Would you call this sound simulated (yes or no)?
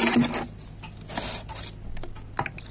no